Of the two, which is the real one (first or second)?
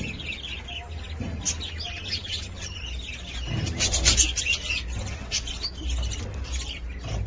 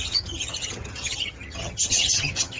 first